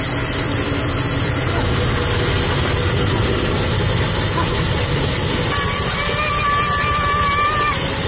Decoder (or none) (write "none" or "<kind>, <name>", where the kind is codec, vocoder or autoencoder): none